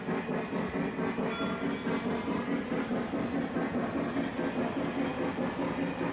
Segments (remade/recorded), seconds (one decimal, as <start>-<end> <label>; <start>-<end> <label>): 0.0-6.1 recorded